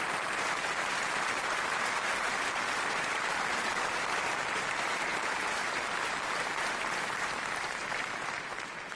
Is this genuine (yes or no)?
no